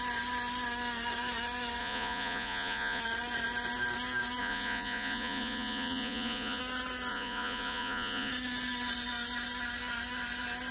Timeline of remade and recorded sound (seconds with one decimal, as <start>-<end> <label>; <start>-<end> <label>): 0.0-1.8 recorded; 1.8-3.0 remade; 3.0-4.4 recorded; 4.4-6.6 remade; 6.6-7.1 recorded; 7.1-8.3 remade; 8.3-10.7 recorded